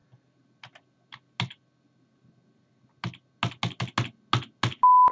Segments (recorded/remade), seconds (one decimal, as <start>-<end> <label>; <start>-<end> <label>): 0.0-5.1 recorded